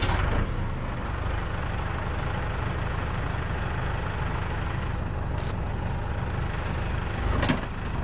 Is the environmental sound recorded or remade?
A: recorded